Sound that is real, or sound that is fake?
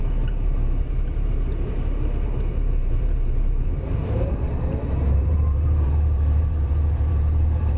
fake